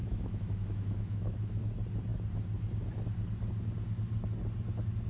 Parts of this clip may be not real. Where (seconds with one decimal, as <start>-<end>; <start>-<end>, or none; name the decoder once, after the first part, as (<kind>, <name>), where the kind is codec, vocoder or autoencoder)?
0.0-1.6 (autoencoder, DAC-VAE)